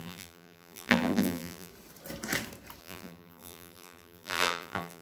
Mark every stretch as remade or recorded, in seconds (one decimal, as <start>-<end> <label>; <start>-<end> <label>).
0.0-1.7 remade; 1.7-2.8 recorded; 2.8-5.0 remade